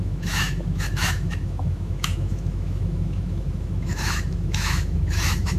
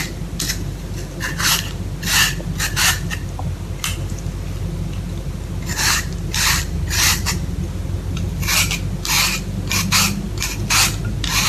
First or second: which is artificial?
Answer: first